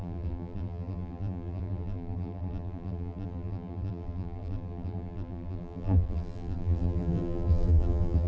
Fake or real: fake